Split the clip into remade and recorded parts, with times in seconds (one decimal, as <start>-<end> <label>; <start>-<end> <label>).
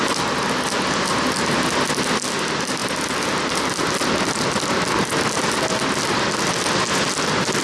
0.0-7.6 recorded